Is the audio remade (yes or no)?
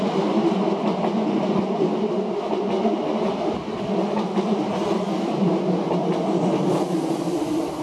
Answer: no